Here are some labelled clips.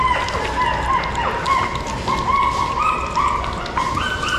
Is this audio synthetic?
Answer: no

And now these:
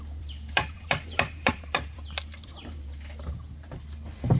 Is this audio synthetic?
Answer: yes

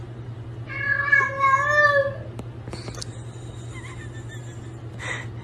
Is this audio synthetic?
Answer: no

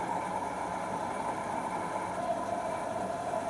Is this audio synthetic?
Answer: no